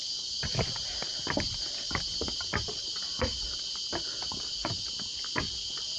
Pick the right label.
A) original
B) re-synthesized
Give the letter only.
A